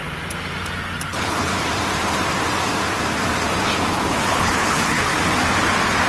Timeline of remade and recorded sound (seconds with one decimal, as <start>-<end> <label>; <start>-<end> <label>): 0.0-1.1 recorded; 1.1-1.5 remade; 1.5-3.9 recorded; 3.9-5.1 remade; 5.1-6.1 recorded